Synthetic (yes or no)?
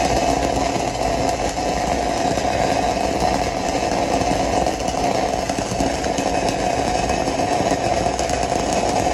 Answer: no